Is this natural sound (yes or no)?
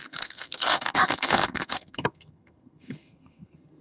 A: no